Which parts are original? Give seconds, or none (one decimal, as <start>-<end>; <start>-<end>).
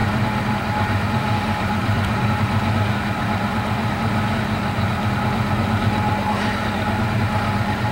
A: 2.4-7.9